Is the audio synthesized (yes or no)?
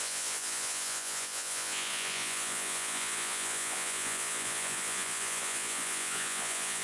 yes